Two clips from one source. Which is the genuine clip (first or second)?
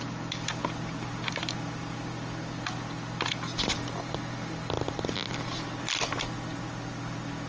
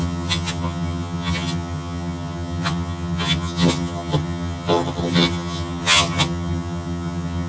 first